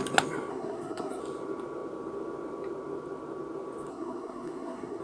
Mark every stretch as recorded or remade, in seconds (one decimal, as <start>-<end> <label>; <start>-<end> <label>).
0.0-0.5 recorded; 0.5-1.2 remade; 1.2-3.9 recorded; 3.9-5.0 remade